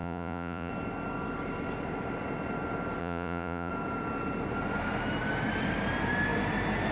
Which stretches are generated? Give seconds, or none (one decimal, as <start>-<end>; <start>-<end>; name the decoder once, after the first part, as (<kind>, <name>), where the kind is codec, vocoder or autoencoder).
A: 0.0-0.7 (vocoder, Vocos); 3.0-3.7

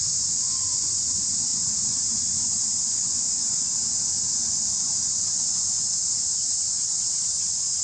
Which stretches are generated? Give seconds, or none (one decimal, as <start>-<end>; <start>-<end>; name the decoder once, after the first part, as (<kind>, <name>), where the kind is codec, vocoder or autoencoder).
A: 0.0-3.7 (vocoder, Vocos); 4.5-7.8

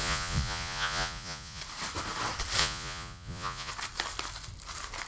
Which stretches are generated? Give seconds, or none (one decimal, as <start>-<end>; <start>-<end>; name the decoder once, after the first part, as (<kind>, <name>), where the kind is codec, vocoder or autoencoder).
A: 0.0-1.6 (vocoder, Vocos); 2.6-3.7

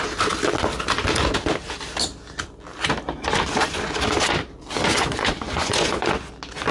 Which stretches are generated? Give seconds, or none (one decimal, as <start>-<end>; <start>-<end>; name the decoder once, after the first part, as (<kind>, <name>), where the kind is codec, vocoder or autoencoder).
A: 4.9-6.3 (vocoder, Vocos)